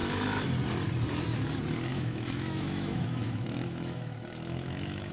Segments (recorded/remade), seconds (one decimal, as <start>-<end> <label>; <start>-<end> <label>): 0.0-1.9 recorded; 1.9-5.1 remade